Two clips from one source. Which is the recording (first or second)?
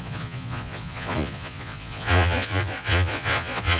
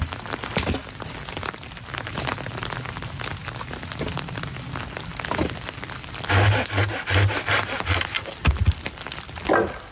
second